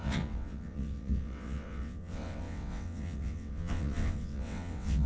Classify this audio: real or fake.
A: fake